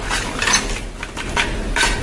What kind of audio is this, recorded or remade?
recorded